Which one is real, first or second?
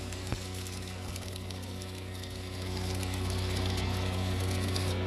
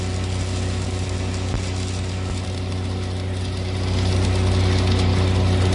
second